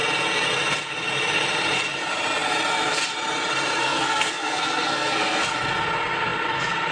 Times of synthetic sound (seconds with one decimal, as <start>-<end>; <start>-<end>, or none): 3.8-5.5